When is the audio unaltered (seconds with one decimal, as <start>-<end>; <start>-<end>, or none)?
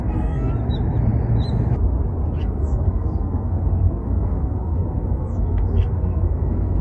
0.5-2.4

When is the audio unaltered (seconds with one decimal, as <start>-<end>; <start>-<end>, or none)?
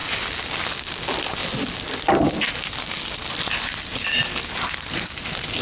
0.0-5.6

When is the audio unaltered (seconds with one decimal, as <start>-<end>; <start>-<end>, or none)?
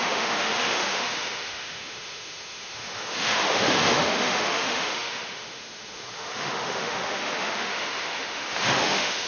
none